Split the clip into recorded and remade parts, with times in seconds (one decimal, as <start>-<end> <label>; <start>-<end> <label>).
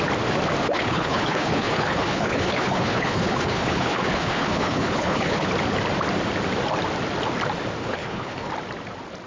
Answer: 0.0-0.6 recorded; 0.6-5.5 remade; 5.5-7.8 recorded; 7.8-8.5 remade; 8.5-9.3 recorded